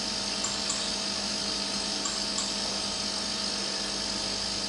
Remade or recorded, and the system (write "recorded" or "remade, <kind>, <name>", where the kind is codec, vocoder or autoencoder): recorded